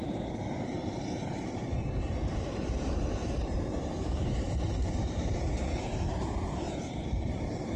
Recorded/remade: remade